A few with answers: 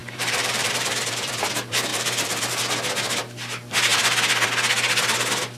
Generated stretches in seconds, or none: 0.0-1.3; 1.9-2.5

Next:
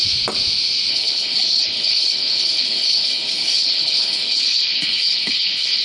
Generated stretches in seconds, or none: 0.9-5.8

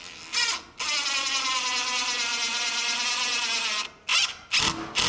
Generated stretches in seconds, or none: none

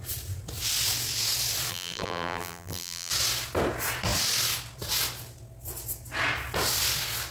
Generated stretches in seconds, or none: 1.7-3.1

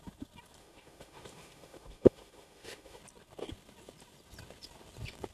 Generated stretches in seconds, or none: 0.6-3.0

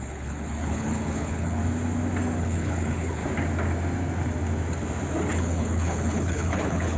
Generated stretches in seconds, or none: 0.0-1.6; 2.4-3.2; 5.3-7.0